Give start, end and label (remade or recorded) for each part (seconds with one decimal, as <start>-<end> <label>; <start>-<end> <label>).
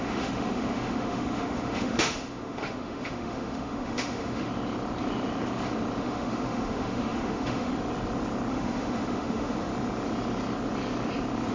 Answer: 0.0-4.5 remade; 4.5-6.0 recorded; 6.0-7.7 remade; 7.7-8.5 recorded; 8.5-9.7 remade; 9.7-11.5 recorded